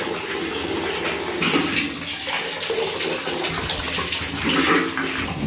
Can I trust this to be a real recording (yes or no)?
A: yes